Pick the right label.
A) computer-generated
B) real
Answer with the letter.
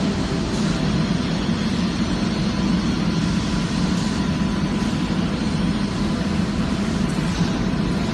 B